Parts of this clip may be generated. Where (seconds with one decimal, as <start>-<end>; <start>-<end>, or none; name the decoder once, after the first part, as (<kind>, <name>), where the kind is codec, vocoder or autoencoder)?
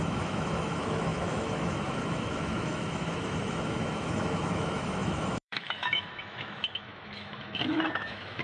0.0-8.4 (autoencoder, DAC-VAE)